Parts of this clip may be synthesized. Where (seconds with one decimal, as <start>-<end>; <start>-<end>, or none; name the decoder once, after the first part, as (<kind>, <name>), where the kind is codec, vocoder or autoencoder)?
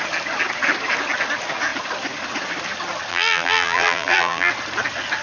3.1-4.5 (vocoder, BigVGAN v2)